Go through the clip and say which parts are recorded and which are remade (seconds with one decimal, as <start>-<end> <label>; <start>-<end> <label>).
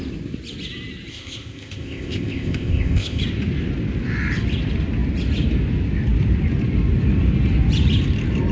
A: 0.0-1.1 recorded; 1.1-3.2 remade; 3.2-8.5 recorded